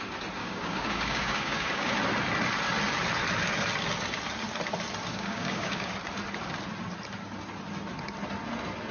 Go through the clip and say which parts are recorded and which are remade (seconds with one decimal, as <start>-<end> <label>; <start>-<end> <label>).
0.0-0.4 recorded; 0.4-1.9 remade; 1.9-5.1 recorded; 5.1-5.9 remade; 5.9-8.9 recorded